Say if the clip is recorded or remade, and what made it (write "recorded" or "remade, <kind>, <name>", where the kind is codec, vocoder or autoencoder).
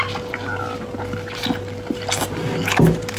recorded